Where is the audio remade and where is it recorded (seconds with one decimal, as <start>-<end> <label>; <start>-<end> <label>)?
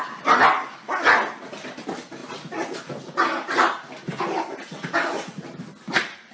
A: 0.0-6.3 recorded